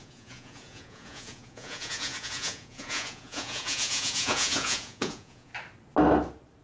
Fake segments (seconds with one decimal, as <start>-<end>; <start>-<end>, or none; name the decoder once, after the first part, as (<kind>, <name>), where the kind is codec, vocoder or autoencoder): 0.0-5.5 (vocoder, Vocos)